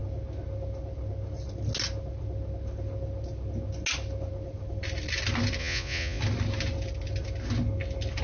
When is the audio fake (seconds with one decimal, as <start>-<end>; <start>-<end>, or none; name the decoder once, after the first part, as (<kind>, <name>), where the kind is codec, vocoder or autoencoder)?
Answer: 5.6-6.2 (vocoder, Vocos)